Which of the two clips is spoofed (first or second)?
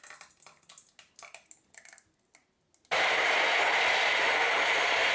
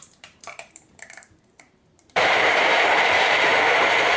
second